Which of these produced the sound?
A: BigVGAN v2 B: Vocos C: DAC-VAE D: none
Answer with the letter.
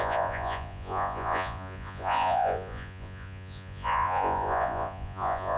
B